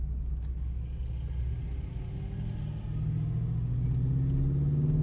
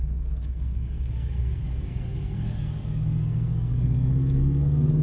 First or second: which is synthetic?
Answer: second